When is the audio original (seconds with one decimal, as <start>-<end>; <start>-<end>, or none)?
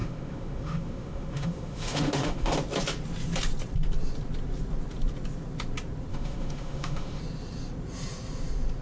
2.6-6.1; 7.2-8.8